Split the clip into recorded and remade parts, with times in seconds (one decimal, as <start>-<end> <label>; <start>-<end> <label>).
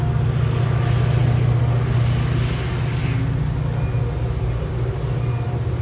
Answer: 0.0-5.8 recorded